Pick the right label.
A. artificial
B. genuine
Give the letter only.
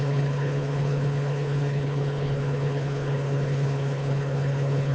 A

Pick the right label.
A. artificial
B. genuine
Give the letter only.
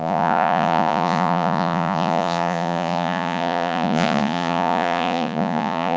A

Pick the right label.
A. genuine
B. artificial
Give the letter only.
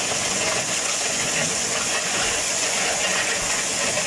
B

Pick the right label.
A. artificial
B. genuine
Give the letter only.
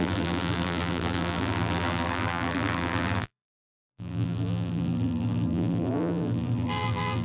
A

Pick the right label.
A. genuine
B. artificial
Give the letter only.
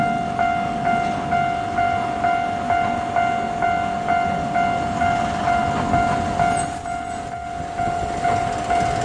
A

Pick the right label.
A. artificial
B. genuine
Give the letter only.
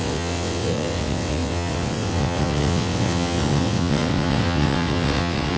A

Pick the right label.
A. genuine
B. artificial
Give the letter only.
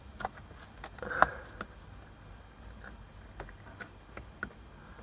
A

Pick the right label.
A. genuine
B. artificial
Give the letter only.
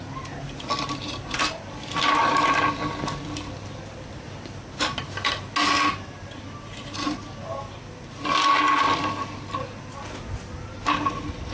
A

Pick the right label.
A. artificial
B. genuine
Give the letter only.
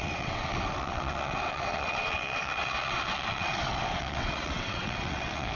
A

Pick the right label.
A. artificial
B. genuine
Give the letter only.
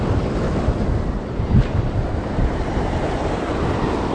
B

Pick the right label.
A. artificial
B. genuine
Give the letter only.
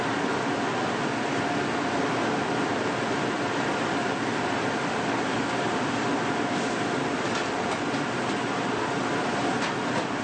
B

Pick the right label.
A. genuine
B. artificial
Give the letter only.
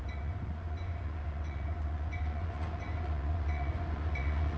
B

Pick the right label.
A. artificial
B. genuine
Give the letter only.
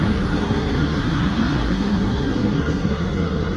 A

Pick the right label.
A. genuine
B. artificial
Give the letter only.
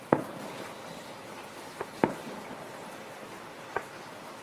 A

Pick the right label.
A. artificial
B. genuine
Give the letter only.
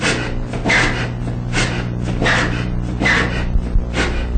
B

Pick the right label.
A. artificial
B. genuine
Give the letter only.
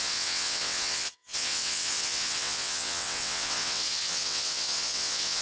A